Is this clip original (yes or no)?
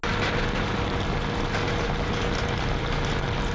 yes